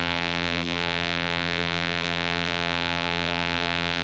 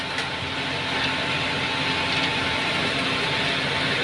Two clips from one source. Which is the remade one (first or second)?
first